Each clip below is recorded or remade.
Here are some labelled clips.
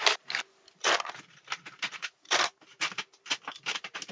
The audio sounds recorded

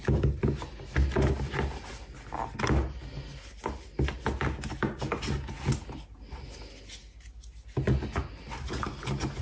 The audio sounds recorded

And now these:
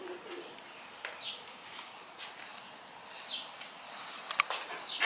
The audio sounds recorded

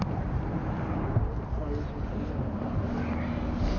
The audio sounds recorded